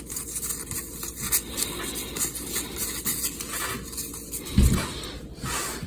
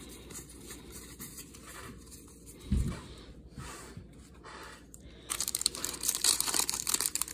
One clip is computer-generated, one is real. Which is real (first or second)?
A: first